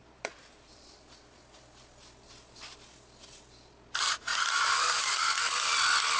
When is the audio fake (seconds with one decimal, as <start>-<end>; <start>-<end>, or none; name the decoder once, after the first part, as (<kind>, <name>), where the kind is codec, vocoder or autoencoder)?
0.0-0.8 (vocoder, BigVGAN v2); 4.3-5.3